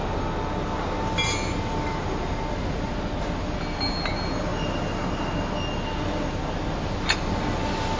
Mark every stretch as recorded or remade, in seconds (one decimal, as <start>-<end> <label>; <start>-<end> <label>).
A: 0.0-8.0 recorded